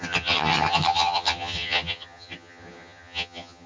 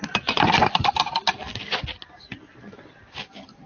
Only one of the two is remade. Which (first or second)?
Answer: first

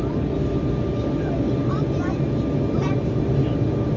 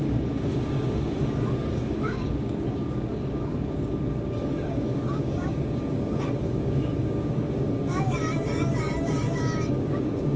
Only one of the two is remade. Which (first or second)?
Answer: second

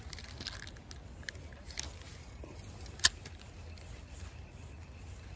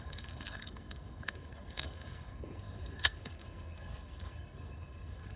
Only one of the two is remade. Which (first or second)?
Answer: second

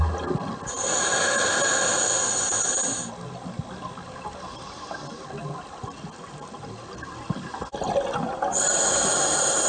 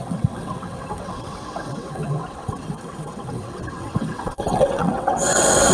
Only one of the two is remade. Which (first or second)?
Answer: second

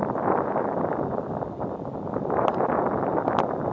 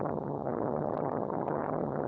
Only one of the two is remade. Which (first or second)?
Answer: second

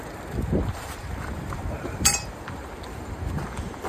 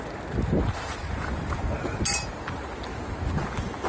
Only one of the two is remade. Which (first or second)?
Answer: first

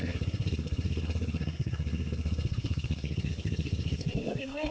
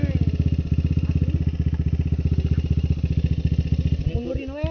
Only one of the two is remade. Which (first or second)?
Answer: first